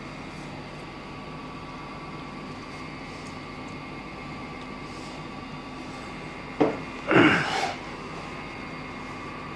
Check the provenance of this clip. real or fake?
real